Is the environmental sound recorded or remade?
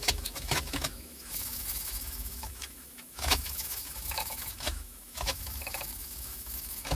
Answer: remade